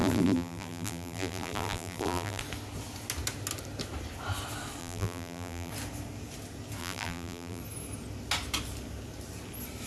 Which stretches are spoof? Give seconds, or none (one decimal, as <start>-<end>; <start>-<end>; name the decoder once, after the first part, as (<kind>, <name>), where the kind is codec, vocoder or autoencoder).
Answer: 0.0-2.4 (vocoder, BigVGAN v2); 4.8-5.7; 6.8-7.6